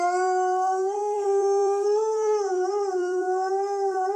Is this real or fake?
fake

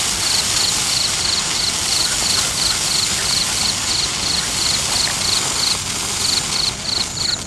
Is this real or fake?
real